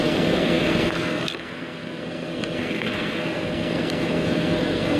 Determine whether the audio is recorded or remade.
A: remade